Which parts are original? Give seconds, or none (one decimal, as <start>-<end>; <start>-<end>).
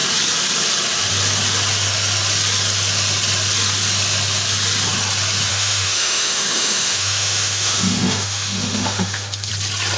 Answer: 0.0-5.5; 9.5-10.0